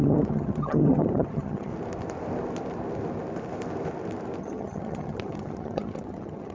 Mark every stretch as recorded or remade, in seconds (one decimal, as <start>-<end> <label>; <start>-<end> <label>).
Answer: 0.0-1.7 remade; 1.7-4.4 recorded; 4.4-6.5 remade